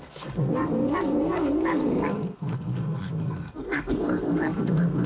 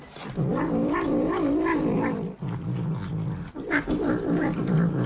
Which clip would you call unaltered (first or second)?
second